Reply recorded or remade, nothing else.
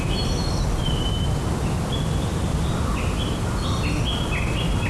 recorded